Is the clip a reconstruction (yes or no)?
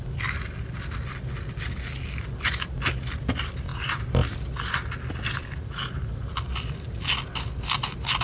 no